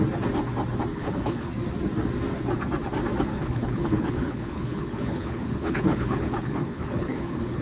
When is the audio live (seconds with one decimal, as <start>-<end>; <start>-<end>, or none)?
0.0-0.9; 1.5-3.3